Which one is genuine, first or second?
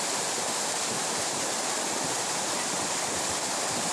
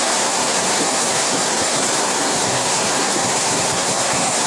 first